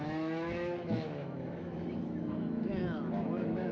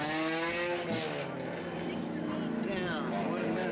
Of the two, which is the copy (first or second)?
first